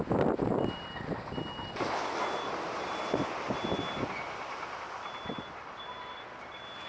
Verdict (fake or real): real